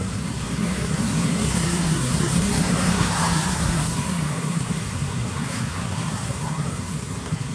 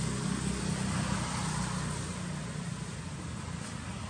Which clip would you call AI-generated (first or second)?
first